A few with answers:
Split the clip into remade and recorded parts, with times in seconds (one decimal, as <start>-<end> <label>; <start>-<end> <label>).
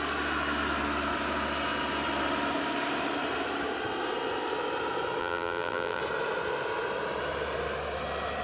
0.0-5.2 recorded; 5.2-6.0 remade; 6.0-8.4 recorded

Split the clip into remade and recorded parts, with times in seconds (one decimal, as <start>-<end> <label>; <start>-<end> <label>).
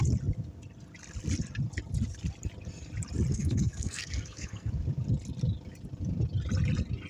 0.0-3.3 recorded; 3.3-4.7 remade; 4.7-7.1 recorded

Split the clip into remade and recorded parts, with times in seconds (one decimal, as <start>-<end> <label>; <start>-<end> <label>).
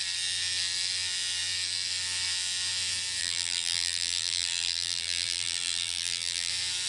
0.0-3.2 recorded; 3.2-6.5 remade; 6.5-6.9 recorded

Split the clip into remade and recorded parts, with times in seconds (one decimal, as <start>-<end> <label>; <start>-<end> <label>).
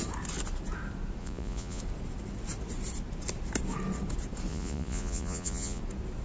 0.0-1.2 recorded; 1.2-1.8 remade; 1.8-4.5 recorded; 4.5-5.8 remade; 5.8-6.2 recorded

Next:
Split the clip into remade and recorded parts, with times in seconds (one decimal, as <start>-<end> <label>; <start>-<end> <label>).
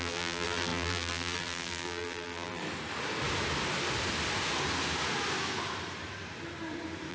0.0-2.6 remade; 2.6-7.1 recorded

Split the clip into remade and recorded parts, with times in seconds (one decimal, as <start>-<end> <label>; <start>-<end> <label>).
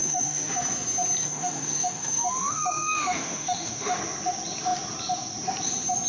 0.0-0.5 remade; 0.5-1.2 recorded; 1.2-4.0 remade; 4.0-6.1 recorded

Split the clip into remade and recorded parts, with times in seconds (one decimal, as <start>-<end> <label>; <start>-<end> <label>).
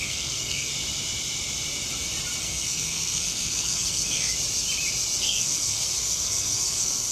0.0-0.7 remade; 0.7-2.4 recorded; 2.4-4.3 remade; 4.3-5.2 recorded; 5.2-7.1 remade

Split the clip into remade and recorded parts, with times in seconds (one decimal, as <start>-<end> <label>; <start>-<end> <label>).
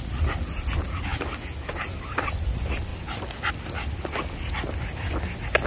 0.0-5.7 recorded